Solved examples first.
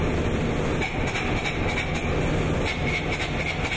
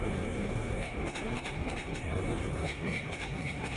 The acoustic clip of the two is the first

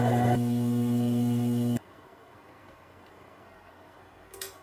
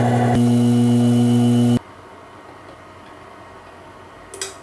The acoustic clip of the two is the second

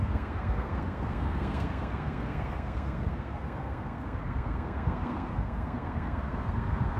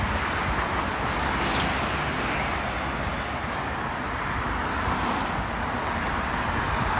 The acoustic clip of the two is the second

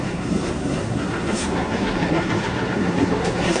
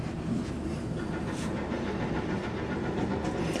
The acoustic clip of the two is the second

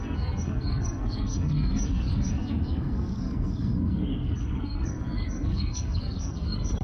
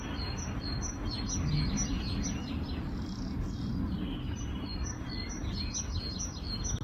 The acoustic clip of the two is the second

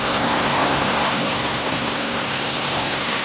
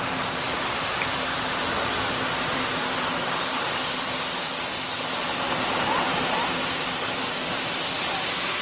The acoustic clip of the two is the second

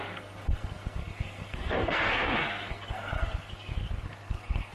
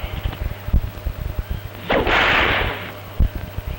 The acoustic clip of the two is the second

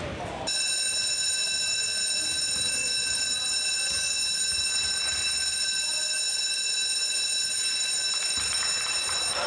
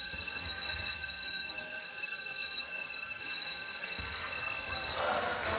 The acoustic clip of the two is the first